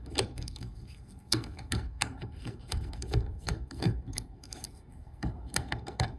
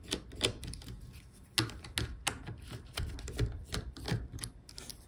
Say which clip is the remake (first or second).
first